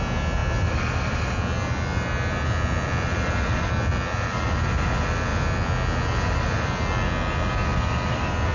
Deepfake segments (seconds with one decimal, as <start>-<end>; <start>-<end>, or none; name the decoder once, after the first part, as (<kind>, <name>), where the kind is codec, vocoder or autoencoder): none